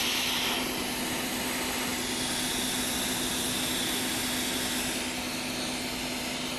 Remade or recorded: recorded